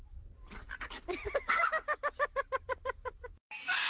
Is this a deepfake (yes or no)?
no